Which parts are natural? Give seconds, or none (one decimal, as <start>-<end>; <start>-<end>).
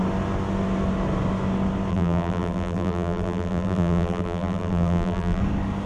0.0-1.9; 5.4-5.9